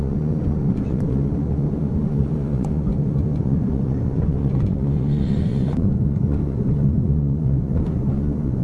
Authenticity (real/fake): fake